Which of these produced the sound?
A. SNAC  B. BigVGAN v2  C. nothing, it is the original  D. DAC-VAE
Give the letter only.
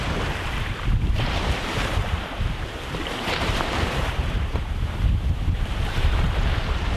B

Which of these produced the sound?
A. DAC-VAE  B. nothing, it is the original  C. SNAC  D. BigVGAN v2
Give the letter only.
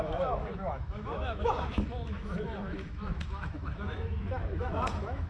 A